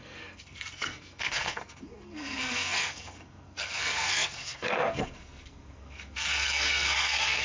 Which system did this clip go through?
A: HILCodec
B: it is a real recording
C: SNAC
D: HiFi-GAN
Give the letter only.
C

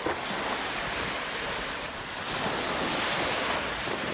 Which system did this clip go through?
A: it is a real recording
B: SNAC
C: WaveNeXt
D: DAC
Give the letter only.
A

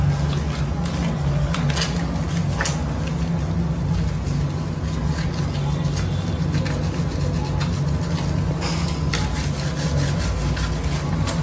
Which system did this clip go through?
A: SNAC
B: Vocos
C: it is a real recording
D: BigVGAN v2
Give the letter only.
C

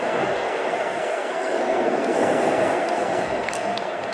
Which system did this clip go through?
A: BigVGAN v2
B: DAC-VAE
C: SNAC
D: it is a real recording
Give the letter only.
C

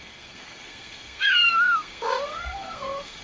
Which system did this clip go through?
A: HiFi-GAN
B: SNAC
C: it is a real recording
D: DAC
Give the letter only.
B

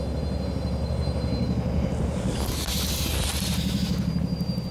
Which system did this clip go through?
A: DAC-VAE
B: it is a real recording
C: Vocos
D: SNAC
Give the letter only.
B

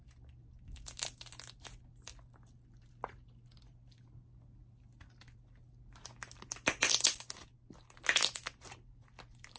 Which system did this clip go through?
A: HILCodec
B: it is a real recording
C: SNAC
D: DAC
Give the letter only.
B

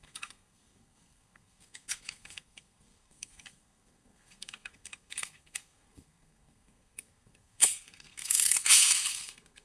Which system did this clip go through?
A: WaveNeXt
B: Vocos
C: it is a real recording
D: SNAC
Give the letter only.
D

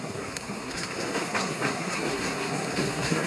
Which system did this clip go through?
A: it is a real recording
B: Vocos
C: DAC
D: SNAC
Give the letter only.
D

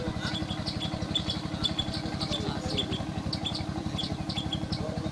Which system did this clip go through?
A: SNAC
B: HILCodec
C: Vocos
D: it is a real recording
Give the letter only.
D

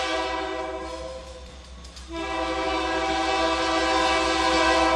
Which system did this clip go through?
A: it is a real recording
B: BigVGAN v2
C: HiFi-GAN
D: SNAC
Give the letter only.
A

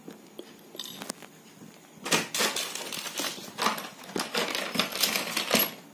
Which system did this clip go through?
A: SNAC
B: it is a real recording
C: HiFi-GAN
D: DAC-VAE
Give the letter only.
B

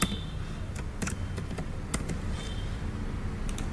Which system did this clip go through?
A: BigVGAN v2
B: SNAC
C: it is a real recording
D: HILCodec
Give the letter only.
C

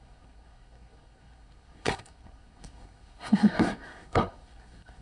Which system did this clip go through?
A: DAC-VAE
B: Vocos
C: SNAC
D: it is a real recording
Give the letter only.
C